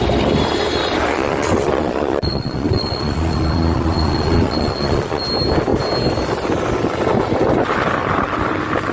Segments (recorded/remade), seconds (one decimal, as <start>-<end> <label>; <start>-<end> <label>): 0.0-1.1 recorded; 1.1-5.2 remade; 5.2-8.9 recorded